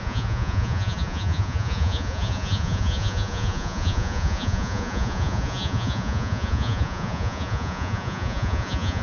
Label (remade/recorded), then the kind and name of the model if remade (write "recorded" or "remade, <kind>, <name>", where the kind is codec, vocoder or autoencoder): remade, vocoder, Vocos